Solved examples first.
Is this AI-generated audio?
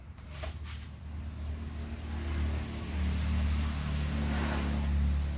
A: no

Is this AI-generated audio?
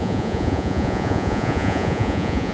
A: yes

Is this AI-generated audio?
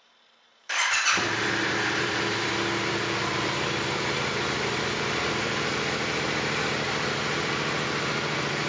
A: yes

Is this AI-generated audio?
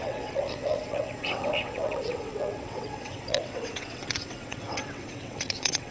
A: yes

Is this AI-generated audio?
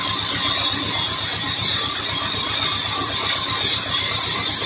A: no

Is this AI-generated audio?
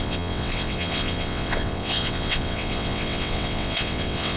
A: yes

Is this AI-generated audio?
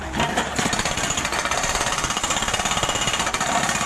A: yes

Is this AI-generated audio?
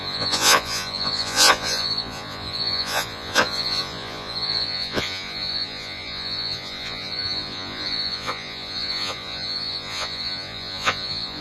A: yes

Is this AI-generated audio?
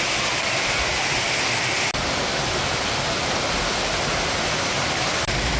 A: no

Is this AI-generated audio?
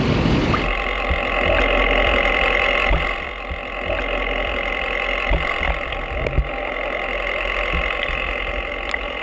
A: no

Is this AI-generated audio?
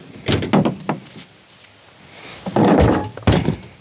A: no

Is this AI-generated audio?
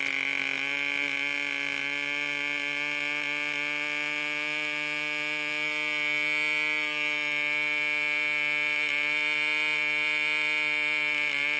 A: no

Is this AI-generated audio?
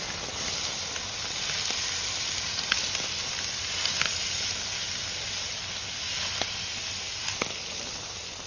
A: no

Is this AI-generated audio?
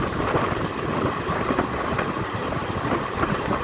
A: yes